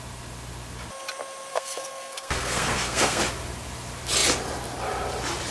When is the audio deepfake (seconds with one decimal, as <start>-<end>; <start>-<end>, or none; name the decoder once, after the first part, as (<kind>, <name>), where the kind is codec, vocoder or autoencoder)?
1.5-3.2 (codec, SNAC)